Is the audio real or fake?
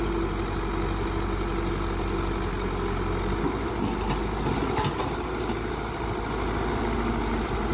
real